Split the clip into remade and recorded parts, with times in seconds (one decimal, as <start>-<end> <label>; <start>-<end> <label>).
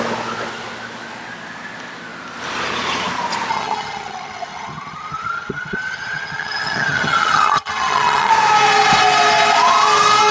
0.0-3.5 recorded; 3.5-8.3 remade; 8.3-10.3 recorded